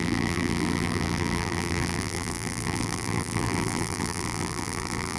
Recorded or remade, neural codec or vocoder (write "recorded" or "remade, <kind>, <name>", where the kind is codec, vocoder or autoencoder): remade, vocoder, BigVGAN v2